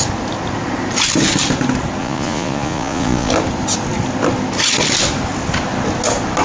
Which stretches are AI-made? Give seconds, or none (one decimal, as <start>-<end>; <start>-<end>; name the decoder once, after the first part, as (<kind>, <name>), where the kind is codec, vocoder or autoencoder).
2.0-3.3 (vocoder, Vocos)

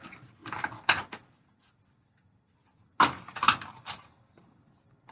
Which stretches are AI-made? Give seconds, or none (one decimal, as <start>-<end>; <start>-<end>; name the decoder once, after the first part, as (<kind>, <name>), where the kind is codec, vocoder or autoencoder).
none

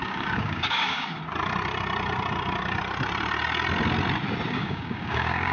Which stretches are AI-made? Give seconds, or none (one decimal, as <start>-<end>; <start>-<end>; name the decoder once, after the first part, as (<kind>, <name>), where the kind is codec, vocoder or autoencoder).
0.0-1.2 (codec, DAC); 4.5-5.5